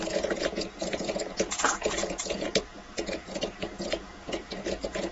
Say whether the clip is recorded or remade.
remade